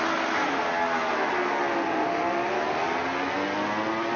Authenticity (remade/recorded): recorded